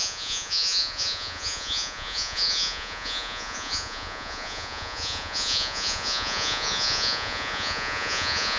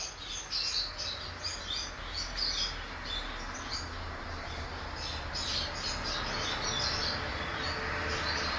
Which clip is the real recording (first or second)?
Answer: second